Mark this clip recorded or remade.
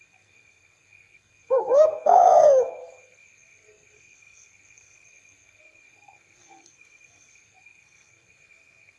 remade